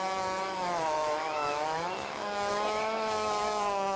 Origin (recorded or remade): remade